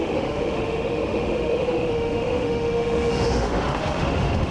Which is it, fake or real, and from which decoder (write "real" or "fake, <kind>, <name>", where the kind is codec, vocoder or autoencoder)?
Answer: fake, autoencoder, DAC-VAE